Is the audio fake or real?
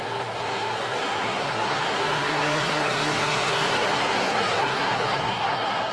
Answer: fake